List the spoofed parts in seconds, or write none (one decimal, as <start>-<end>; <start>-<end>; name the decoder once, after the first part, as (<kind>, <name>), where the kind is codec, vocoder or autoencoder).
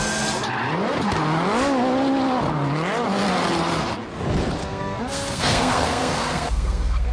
4.6-7.1 (codec, SNAC)